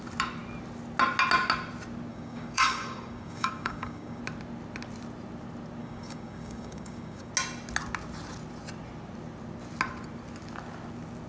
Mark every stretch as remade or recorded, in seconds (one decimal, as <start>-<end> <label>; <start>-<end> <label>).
0.0-2.1 recorded; 2.1-4.2 remade; 4.2-5.8 recorded; 5.8-7.3 remade; 7.3-11.3 recorded